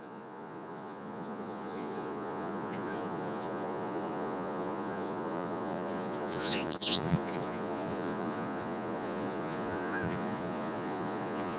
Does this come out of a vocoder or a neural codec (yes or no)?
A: yes